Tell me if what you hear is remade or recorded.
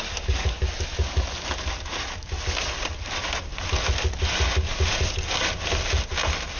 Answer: recorded